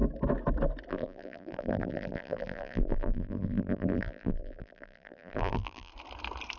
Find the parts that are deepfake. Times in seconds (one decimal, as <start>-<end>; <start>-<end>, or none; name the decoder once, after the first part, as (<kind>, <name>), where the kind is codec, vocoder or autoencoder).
0.9-5.9 (vocoder, BigVGAN v2)